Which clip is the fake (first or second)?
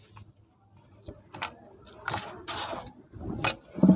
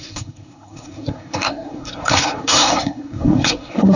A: second